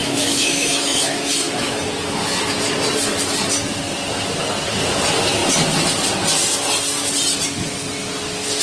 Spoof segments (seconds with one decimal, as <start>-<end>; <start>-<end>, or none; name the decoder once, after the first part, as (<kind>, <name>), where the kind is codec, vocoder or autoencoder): 0.0-1.8 (autoencoder, DAC-VAE)